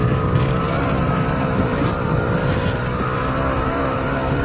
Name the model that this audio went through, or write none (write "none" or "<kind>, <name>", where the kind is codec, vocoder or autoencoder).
vocoder, BigVGAN v2